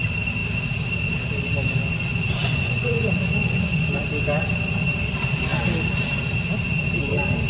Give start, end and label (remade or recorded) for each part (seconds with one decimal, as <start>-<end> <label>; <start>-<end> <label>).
0.0-2.4 recorded; 2.4-4.1 remade; 4.1-7.5 recorded